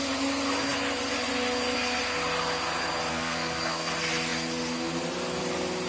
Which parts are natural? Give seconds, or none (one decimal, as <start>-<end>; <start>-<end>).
0.0-3.1; 3.9-5.9